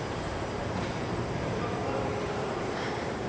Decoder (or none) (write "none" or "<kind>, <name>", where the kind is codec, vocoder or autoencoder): vocoder, BigVGAN v2